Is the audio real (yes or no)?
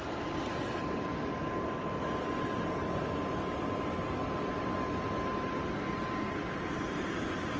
yes